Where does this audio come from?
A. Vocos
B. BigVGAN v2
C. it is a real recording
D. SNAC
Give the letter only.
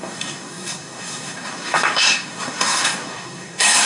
D